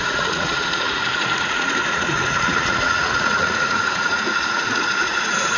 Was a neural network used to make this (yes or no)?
yes